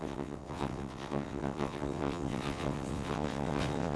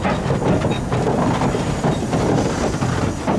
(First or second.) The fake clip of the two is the first